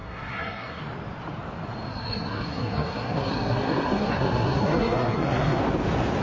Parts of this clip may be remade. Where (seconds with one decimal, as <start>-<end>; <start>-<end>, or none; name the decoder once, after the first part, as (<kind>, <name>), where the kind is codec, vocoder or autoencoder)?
0.0-0.8 (codec, SNAC); 1.9-5.6